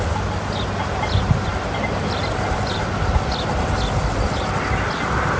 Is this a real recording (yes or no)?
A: yes